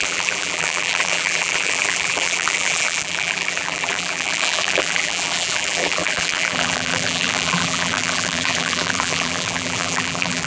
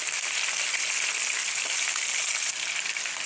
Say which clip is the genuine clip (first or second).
second